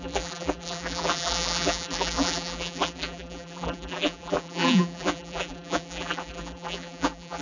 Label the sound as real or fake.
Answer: fake